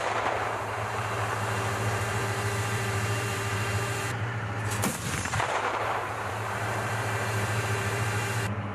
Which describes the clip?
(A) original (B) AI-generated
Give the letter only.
B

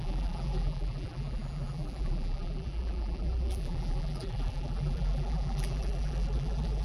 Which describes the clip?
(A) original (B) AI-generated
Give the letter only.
B